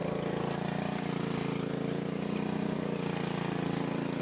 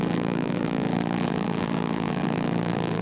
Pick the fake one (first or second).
second